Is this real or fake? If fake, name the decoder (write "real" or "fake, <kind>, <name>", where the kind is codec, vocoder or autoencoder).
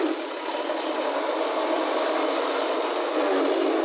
real